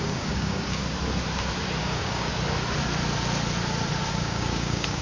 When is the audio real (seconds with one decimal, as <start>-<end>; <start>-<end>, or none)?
0.8-1.8; 2.3-4.1